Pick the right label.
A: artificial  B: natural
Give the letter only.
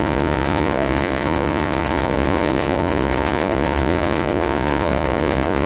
A